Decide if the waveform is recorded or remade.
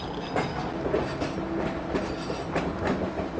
recorded